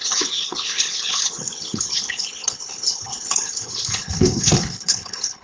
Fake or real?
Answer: fake